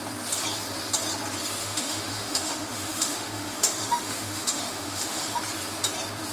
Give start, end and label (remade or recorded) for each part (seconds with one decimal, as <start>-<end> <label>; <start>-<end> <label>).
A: 0.0-1.6 recorded; 1.6-5.4 remade; 5.4-6.3 recorded